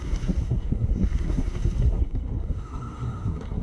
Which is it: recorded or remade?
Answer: remade